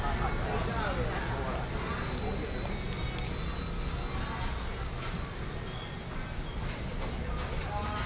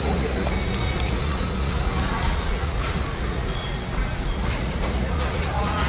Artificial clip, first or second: second